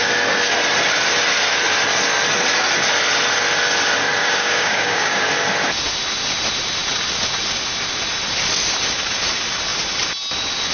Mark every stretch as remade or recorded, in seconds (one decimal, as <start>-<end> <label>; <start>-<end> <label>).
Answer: 0.0-4.2 recorded; 4.2-5.2 remade; 5.2-10.7 recorded

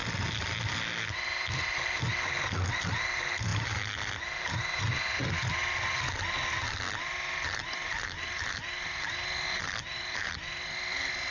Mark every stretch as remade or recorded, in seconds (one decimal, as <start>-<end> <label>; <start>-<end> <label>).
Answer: 0.0-11.3 recorded

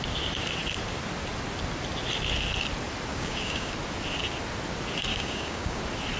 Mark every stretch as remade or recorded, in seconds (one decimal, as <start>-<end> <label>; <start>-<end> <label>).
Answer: 0.0-3.1 recorded; 3.1-3.7 remade; 3.7-5.1 recorded; 5.1-5.8 remade; 5.8-6.2 recorded